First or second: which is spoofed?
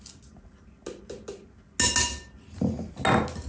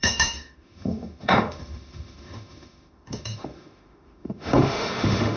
second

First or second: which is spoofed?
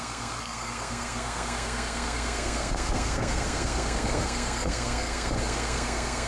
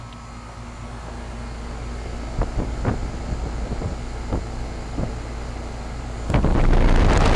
first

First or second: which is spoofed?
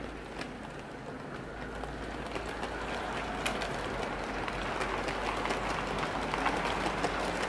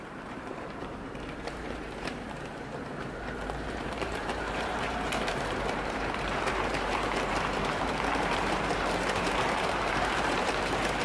second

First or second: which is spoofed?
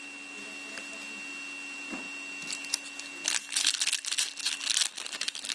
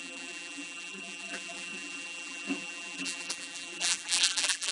second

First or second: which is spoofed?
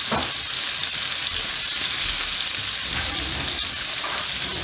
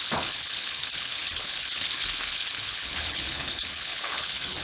second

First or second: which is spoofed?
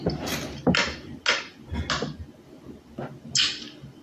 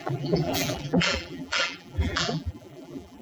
second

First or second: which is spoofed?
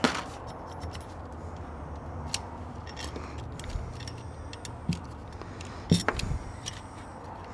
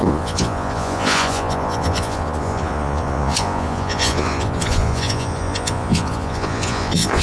second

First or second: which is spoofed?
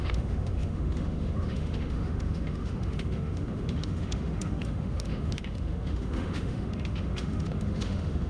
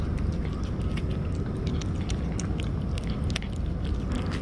first